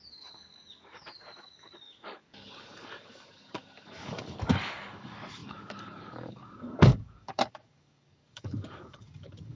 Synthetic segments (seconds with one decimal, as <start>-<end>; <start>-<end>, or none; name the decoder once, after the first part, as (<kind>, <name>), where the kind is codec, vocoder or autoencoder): 0.0-9.6 (codec, DAC)